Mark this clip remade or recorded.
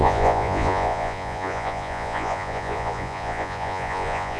remade